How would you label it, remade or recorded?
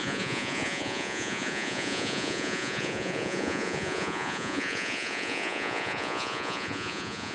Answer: remade